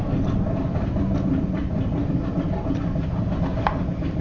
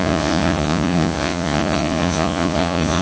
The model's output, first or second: second